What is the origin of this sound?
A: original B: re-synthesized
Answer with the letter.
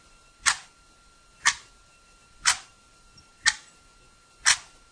A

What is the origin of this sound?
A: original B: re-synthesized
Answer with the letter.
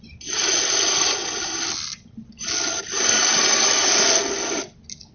A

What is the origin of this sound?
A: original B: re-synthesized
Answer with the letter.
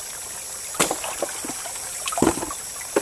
A